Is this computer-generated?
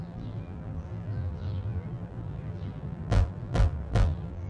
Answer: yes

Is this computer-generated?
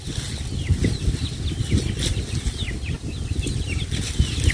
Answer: no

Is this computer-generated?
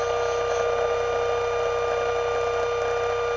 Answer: no